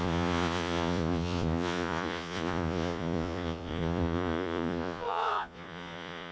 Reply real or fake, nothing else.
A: fake